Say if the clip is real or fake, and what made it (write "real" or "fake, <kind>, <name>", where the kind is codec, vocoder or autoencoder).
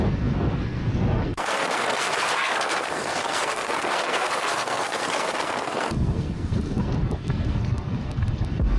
fake, codec, SNAC